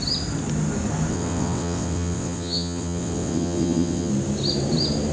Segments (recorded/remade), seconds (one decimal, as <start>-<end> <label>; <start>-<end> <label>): 0.0-1.1 recorded; 1.1-4.1 remade; 4.1-5.1 recorded